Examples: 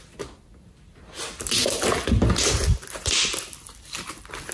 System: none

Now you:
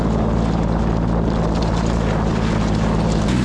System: none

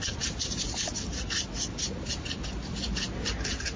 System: none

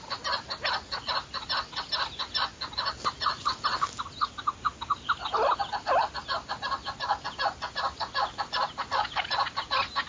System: none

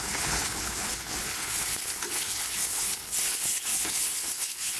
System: codec, HILCodec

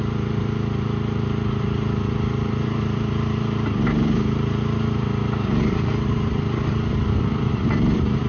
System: vocoder, BigVGAN v2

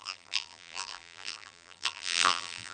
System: vocoder, BigVGAN v2